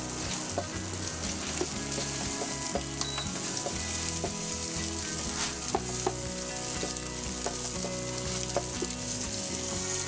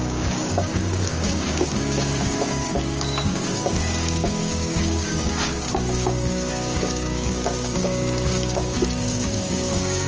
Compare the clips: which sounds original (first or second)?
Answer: first